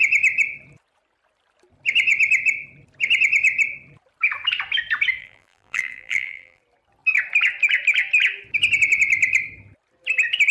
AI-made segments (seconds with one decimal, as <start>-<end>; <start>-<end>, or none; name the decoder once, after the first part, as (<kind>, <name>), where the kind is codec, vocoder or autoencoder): 5.2-6.6 (vocoder, BigVGAN v2)